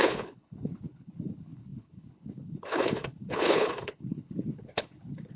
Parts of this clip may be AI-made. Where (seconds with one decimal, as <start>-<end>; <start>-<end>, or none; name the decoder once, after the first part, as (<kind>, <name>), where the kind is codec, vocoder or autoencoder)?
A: 0.0-5.4 (codec, HILCodec)